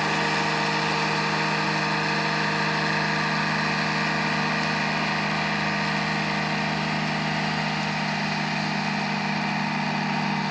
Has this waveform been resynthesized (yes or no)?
no